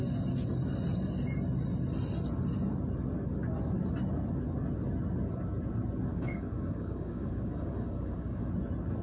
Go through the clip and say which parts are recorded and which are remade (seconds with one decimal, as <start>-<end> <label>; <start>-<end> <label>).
0.0-6.1 recorded; 6.1-8.5 remade; 8.5-9.0 recorded